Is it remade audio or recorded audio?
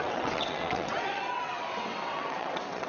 remade